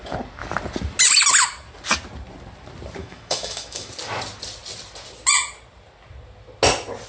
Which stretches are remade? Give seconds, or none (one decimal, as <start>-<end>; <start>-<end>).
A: 3.0-3.9